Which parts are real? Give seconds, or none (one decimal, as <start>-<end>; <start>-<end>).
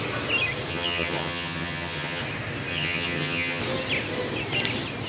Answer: 0.0-0.7; 2.2-2.7; 3.6-5.1